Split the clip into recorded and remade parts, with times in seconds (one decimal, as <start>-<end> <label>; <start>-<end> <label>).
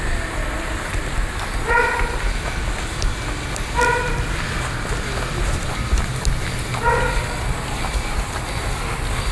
0.0-9.3 recorded